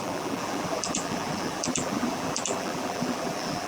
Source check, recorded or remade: remade